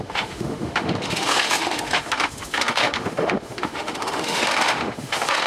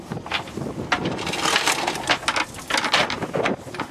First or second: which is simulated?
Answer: first